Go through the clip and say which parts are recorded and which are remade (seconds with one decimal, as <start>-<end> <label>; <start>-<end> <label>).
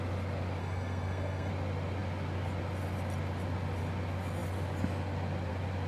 0.0-0.6 recorded; 0.6-1.5 remade; 1.5-5.9 recorded